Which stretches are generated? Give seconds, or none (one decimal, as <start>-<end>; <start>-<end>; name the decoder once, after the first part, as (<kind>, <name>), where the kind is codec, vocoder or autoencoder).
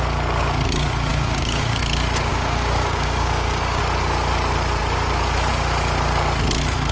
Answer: 1.1-1.8 (codec, DAC); 2.3-3.8